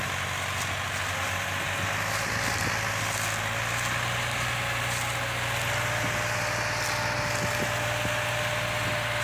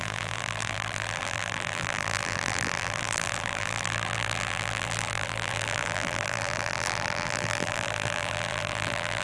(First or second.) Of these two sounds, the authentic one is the first